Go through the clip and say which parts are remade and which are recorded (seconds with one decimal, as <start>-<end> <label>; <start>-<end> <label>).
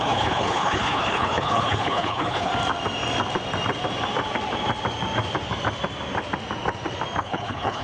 0.0-2.5 remade; 2.5-7.2 recorded; 7.2-7.8 remade